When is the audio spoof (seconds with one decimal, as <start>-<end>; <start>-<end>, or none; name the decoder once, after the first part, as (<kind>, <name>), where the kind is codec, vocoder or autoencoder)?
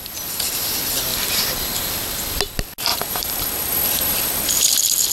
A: 1.1-1.9 (vocoder, BigVGAN v2); 2.9-3.7